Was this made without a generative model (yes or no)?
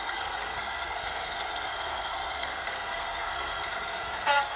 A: no